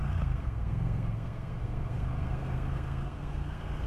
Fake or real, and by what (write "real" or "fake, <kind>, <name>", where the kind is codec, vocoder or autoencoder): fake, codec, SNAC